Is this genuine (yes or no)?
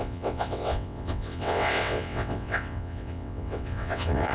no